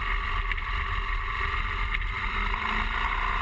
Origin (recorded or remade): remade